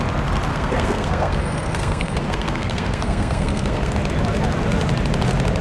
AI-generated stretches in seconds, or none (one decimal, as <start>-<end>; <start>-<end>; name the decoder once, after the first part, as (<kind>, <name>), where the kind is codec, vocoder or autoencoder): 0.5-3.9 (codec, SNAC)